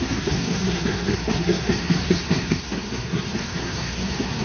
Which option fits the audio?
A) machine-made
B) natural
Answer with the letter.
A